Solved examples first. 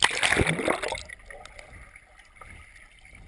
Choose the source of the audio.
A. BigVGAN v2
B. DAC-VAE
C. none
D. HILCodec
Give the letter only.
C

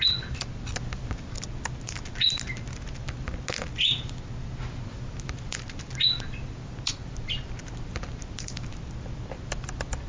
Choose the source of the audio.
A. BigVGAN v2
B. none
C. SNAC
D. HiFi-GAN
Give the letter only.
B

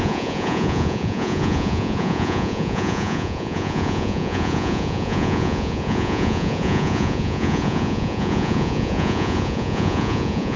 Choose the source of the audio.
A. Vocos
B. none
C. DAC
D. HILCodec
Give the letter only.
A